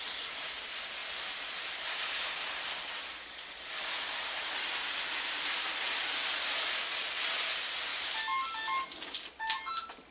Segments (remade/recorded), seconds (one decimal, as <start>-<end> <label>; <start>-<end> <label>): 0.0-10.1 recorded